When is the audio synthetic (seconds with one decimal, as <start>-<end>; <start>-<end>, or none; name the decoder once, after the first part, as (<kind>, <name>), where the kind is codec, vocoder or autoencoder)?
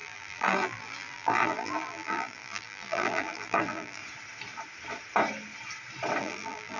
0.0-4.0 (vocoder, BigVGAN v2); 6.2-6.8